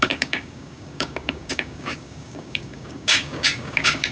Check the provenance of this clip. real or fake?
fake